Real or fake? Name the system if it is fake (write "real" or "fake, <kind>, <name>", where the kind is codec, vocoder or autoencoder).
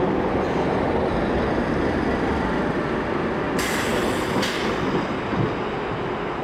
real